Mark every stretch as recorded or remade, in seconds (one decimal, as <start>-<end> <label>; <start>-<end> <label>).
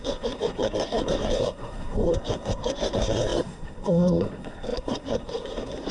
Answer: 0.0-5.9 remade